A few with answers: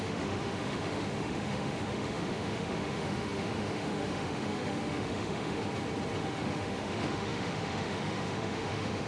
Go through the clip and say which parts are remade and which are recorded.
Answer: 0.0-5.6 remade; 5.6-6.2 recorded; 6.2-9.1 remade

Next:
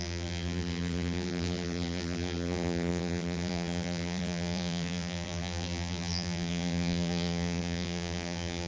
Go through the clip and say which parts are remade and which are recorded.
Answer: 0.0-8.7 remade

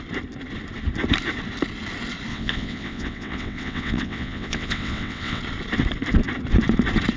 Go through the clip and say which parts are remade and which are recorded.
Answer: 0.0-2.3 recorded; 2.3-5.4 remade; 5.4-7.2 recorded

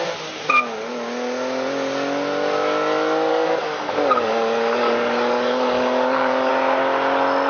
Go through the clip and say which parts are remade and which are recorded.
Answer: 0.0-3.3 recorded; 3.3-6.5 remade; 6.5-7.5 recorded